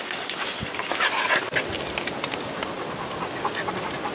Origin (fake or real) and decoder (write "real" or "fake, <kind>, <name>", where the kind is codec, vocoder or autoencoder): real